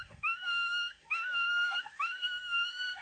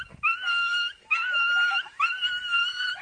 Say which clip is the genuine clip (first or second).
second